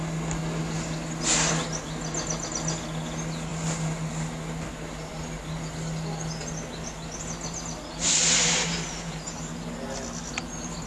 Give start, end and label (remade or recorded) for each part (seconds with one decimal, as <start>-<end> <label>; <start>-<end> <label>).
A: 0.0-10.9 recorded